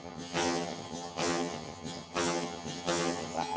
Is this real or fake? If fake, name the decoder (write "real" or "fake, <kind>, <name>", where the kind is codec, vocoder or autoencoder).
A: fake, vocoder, HiFi-GAN